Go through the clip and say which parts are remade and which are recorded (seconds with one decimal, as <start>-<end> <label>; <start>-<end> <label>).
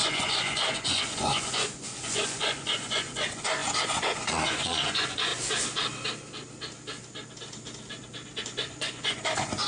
0.0-5.3 remade; 5.3-8.4 recorded; 8.4-9.7 remade